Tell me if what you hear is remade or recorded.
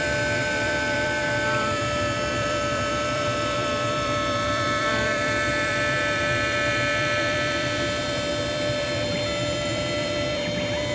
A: remade